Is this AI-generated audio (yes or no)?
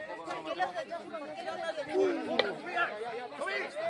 no